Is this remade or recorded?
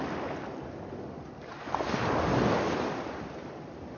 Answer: recorded